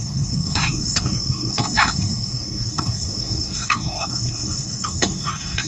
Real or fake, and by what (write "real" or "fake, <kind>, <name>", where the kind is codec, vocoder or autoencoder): fake, codec, SNAC